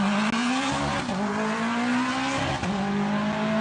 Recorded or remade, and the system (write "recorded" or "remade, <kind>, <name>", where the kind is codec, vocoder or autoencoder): recorded